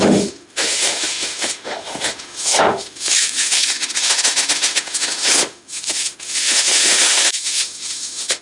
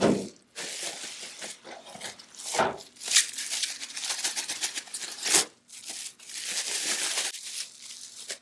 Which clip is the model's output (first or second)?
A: first